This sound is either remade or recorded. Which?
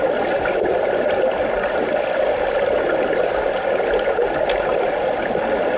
recorded